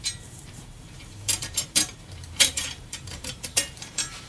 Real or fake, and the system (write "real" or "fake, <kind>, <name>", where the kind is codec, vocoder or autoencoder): fake, vocoder, BigVGAN v2